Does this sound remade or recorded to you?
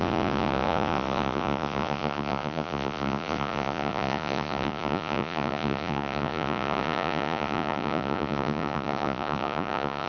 remade